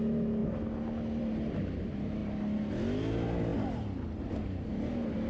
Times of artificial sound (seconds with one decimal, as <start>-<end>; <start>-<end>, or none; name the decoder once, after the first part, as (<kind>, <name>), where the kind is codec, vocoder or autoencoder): none